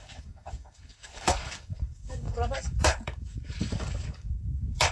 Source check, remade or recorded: remade